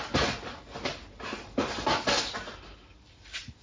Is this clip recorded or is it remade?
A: recorded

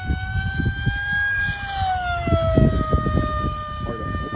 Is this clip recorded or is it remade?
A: recorded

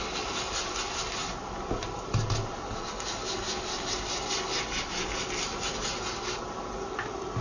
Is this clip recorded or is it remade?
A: recorded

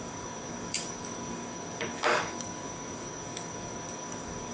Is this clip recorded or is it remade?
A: remade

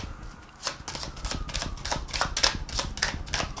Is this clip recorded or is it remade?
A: recorded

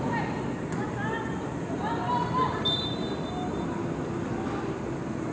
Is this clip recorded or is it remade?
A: recorded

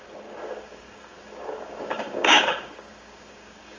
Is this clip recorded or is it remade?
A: remade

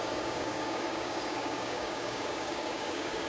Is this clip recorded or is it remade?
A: remade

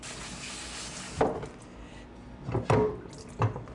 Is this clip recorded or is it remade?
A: recorded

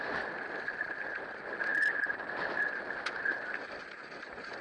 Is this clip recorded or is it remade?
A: recorded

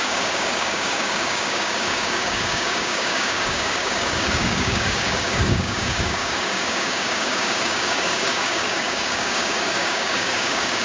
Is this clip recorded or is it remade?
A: remade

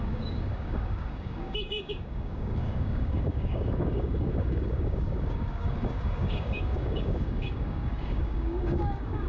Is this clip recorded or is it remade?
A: remade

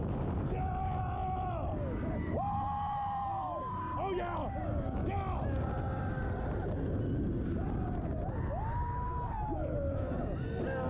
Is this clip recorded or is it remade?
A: recorded